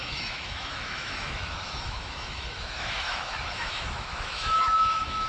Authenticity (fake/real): fake